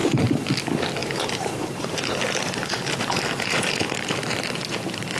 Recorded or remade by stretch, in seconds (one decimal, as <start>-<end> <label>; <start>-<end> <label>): 0.0-0.5 remade; 0.5-1.0 recorded; 1.0-4.1 remade; 4.1-5.2 recorded